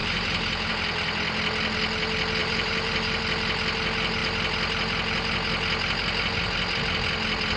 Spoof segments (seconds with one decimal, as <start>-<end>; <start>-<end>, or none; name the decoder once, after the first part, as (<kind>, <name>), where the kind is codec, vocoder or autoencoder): 0.0-0.7 (vocoder, BigVGAN v2); 2.4-3.2